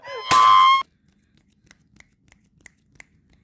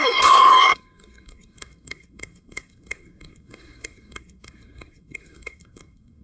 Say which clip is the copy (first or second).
second